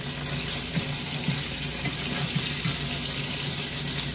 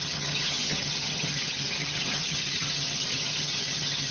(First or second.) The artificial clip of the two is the second